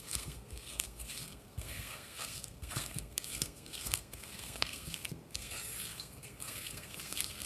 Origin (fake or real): fake